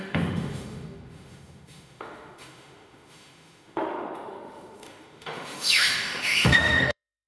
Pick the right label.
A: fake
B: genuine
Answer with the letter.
A